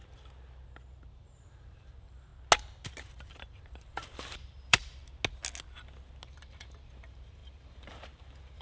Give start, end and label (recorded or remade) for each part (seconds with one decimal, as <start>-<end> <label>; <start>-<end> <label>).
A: 0.0-1.1 recorded; 1.1-2.3 remade; 2.3-3.0 recorded; 3.0-5.0 remade; 5.0-6.3 recorded; 6.3-8.6 remade